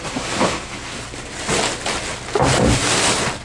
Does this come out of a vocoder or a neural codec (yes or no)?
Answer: no